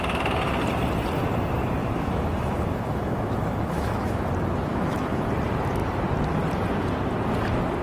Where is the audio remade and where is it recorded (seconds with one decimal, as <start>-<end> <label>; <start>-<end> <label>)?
0.0-1.8 recorded; 1.8-4.3 remade; 4.3-4.7 recorded; 4.7-5.3 remade; 5.3-7.8 recorded